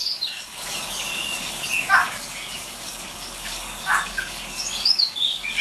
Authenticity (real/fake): fake